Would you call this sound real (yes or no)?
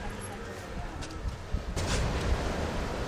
yes